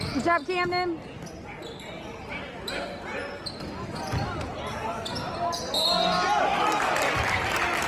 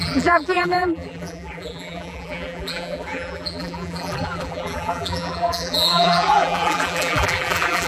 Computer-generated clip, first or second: second